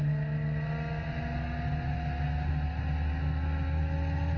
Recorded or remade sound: recorded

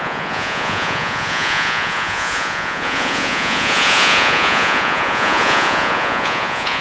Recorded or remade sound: remade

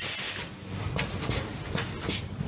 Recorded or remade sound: recorded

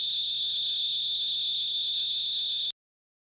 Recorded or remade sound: recorded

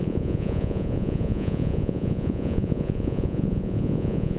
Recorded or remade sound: remade